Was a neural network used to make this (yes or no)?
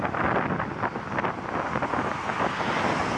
no